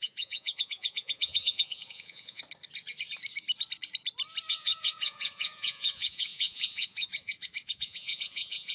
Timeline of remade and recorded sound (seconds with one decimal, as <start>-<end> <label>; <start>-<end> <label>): 0.0-2.4 remade; 2.4-4.5 recorded; 4.5-8.7 remade